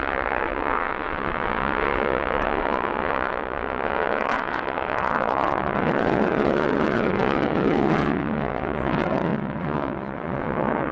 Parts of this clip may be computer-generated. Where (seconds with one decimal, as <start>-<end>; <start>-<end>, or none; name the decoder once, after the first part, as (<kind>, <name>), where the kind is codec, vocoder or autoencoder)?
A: 0.0-10.9 (vocoder, WaveNeXt)